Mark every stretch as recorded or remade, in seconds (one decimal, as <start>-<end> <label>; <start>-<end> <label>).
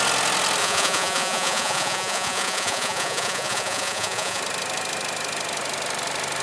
0.0-0.6 recorded; 0.6-4.4 remade; 4.4-6.4 recorded